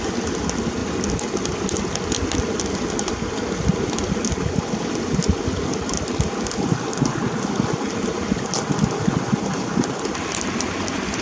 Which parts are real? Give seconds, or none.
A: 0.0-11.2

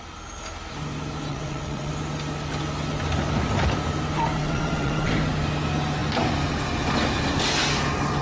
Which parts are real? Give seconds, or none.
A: 0.0-1.3; 1.9-4.4; 5.1-8.2

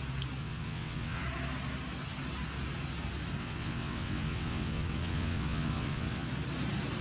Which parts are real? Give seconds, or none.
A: 0.0-0.4; 1.2-3.4; 6.3-7.0